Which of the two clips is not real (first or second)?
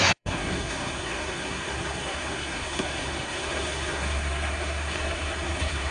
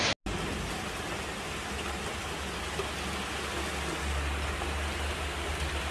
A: first